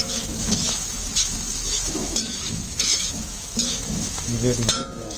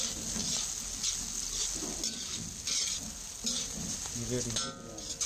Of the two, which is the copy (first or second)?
first